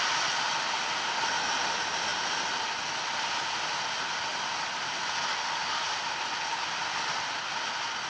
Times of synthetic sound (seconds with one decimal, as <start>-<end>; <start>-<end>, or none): none